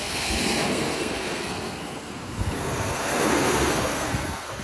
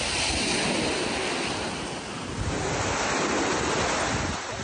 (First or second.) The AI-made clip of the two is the first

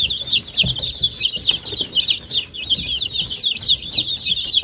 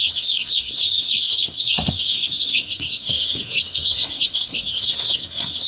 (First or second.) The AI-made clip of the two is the second